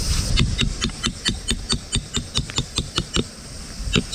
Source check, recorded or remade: recorded